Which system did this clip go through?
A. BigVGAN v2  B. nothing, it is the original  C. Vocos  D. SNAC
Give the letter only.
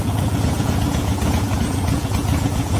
C